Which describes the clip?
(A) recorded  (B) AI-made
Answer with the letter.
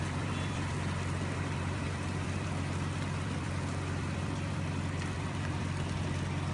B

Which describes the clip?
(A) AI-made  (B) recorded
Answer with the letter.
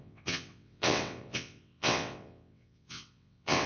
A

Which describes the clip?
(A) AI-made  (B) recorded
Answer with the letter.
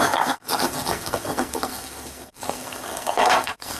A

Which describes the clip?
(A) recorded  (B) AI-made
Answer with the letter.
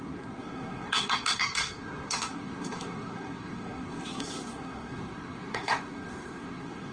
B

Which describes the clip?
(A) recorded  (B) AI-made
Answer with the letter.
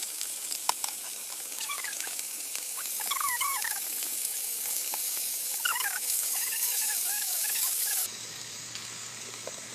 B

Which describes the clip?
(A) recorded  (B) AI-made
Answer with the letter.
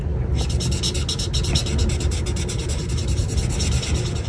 A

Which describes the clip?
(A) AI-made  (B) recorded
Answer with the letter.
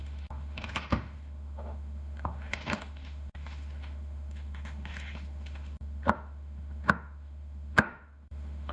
A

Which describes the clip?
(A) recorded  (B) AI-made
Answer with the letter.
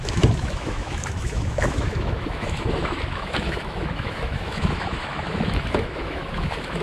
B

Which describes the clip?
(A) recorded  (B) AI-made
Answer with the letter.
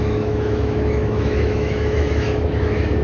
B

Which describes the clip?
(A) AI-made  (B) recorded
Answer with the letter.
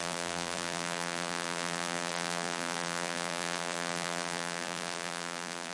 A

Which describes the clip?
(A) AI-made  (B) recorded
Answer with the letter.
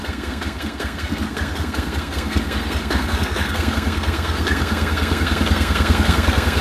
A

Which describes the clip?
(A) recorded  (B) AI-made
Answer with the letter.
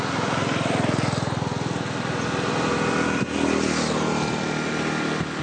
A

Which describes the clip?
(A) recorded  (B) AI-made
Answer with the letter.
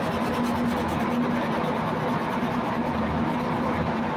A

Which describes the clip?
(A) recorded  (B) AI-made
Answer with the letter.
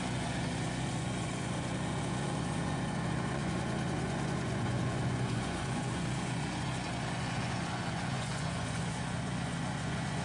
B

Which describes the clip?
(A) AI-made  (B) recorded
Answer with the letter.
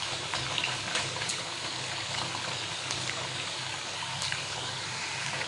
A